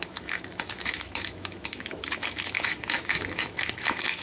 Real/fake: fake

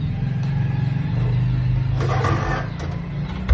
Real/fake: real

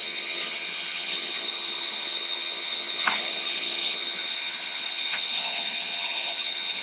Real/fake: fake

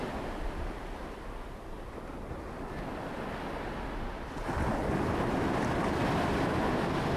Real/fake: real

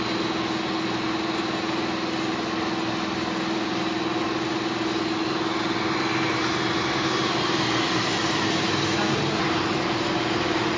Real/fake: real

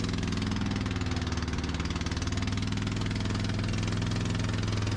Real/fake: real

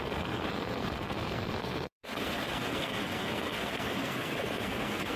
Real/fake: fake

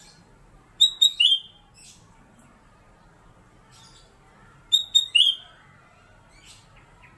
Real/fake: real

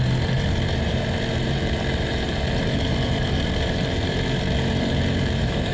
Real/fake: fake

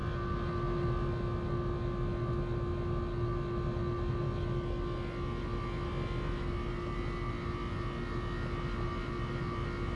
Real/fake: real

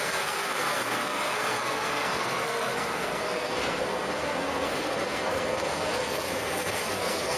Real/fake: fake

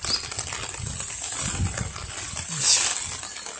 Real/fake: real